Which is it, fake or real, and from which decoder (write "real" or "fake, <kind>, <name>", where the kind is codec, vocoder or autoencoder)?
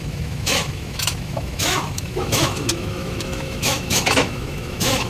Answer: fake, autoencoder, DAC-VAE